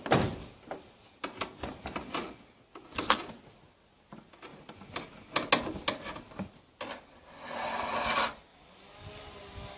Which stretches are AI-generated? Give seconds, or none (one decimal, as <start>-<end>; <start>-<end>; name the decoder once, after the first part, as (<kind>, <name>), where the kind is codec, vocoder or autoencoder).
8.5-9.2 (vocoder, BigVGAN v2)